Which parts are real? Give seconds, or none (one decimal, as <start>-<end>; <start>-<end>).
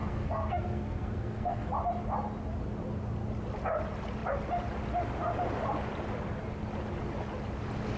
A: 1.7-8.0